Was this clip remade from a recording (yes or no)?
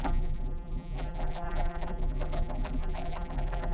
yes